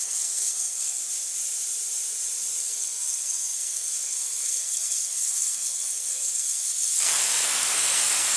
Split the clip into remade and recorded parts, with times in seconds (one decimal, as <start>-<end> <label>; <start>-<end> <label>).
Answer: 0.0-1.0 remade; 1.0-2.6 recorded; 2.6-8.4 remade